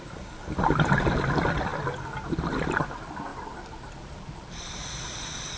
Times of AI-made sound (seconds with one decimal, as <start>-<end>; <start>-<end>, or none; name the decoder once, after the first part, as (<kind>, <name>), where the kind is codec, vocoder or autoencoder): 3.3-4.8 (vocoder, BigVGAN v2)